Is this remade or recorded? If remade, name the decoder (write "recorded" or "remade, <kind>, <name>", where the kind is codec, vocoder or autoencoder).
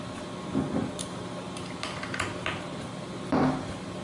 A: recorded